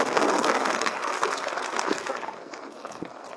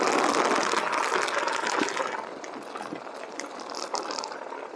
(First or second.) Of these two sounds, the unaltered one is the second